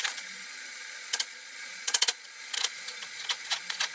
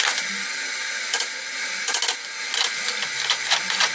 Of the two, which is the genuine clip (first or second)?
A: second